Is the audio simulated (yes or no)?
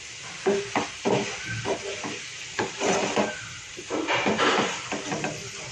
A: yes